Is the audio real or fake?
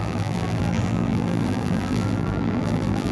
fake